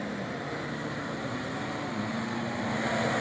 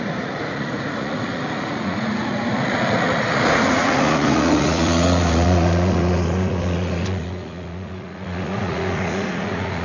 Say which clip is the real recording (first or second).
first